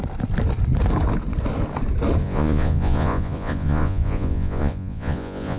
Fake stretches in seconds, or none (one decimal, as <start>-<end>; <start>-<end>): 2.2-5.6